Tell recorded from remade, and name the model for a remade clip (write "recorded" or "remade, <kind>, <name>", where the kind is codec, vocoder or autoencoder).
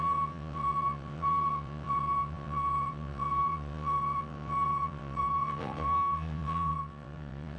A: remade, vocoder, WaveNeXt